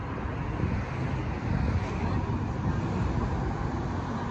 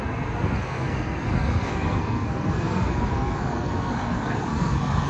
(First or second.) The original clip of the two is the first